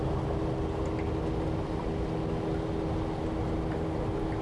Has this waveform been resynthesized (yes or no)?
no